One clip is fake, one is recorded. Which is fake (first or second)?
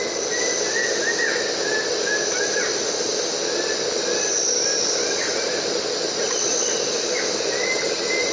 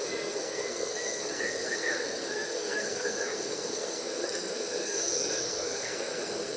second